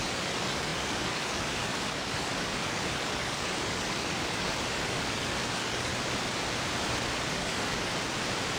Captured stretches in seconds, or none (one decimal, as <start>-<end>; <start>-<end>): 5.9-7.3; 7.9-8.6